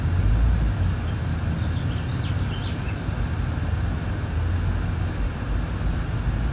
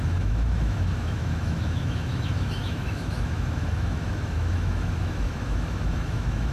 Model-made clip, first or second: second